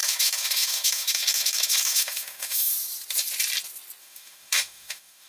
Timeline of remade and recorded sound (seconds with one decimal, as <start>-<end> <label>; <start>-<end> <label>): 0.0-2.7 remade; 2.7-4.0 recorded; 4.0-5.3 remade